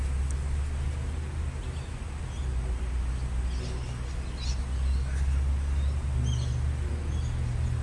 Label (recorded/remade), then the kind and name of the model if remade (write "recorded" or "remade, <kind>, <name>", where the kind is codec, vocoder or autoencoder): recorded